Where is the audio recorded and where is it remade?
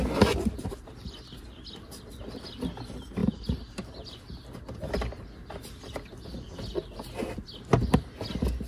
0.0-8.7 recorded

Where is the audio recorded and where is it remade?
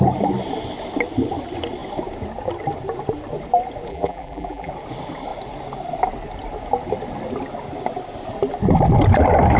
0.0-3.9 recorded; 3.9-4.7 remade; 4.7-9.6 recorded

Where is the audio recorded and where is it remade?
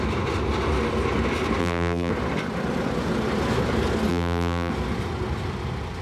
0.0-1.6 recorded; 1.6-2.1 remade; 2.1-4.1 recorded; 4.1-4.7 remade; 4.7-6.0 recorded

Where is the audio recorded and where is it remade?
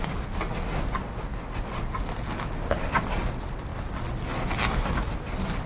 0.0-5.7 recorded